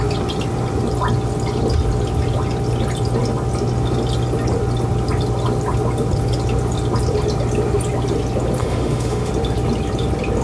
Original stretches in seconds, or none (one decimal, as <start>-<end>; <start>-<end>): 0.0-8.6; 9.3-10.4